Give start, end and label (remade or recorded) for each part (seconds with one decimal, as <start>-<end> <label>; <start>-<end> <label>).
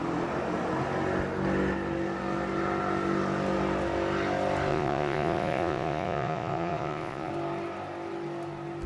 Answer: 0.0-4.7 recorded; 4.7-7.3 remade; 7.3-8.9 recorded